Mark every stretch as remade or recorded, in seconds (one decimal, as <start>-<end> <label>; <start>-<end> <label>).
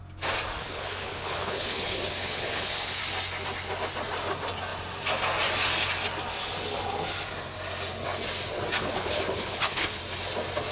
0.0-0.6 recorded; 0.6-3.0 remade; 3.0-8.8 recorded; 8.8-10.0 remade; 10.0-10.7 recorded